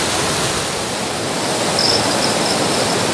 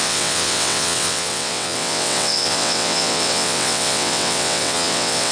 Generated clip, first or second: second